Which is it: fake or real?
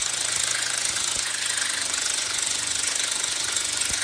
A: fake